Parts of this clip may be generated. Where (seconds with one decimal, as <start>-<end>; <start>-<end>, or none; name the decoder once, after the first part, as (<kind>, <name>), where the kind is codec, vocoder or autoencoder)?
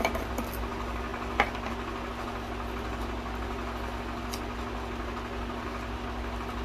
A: none